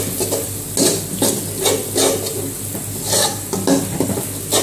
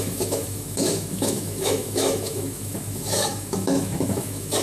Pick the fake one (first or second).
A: second